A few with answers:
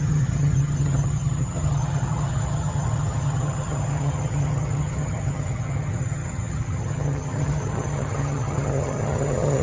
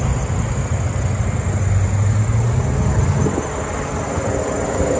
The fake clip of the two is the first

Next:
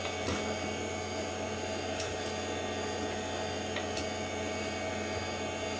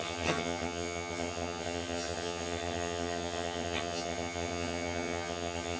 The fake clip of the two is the second